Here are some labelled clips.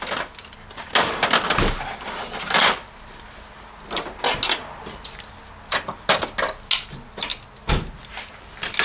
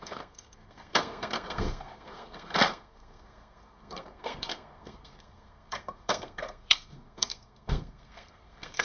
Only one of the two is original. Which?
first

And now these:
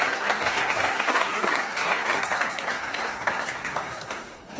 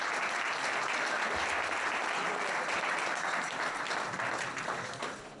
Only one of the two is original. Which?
second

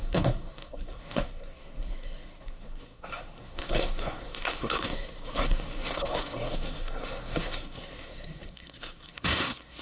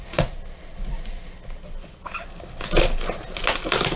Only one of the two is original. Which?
second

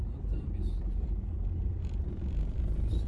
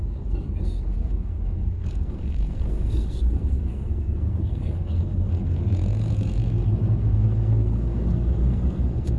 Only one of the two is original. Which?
first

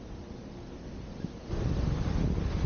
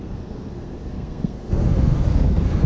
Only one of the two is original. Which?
first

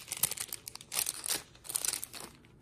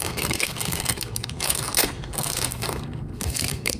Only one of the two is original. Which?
first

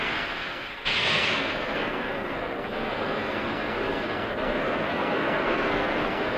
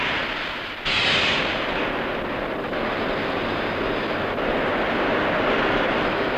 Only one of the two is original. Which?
second